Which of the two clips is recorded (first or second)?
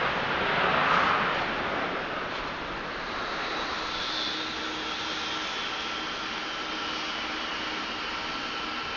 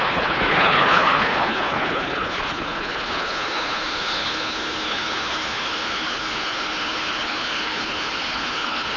first